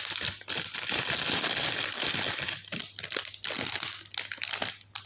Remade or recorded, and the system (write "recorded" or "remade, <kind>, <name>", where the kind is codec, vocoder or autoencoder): recorded